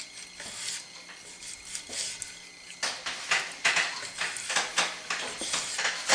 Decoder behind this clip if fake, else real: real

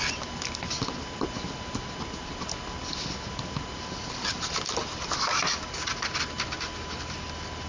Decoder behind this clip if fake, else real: real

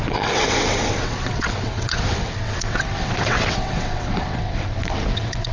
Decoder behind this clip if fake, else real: fake, vocoder, WaveNeXt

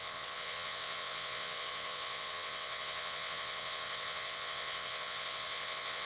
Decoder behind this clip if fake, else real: fake, vocoder, WaveNeXt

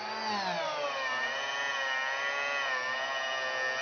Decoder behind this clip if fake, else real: real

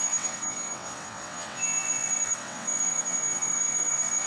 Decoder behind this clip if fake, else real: fake, vocoder, WaveNeXt